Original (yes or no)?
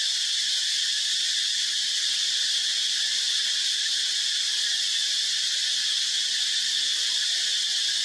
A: yes